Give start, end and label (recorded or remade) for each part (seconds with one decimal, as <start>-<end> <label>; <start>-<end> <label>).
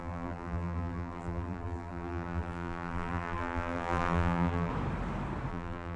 0.0-4.7 remade; 4.7-5.5 recorded; 5.5-6.0 remade